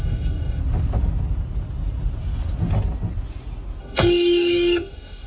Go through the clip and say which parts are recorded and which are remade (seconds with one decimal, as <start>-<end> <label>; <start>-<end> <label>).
0.0-0.6 remade; 0.6-3.8 recorded; 3.8-5.3 remade